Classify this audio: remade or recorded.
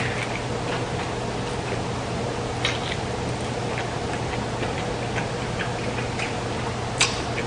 recorded